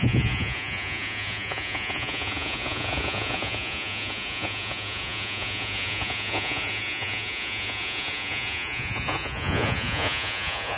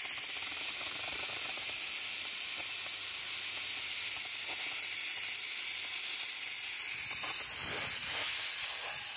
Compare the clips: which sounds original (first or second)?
second